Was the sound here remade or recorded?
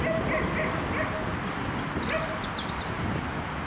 recorded